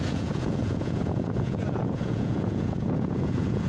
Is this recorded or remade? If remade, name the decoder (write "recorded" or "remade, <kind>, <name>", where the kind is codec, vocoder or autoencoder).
remade, vocoder, Vocos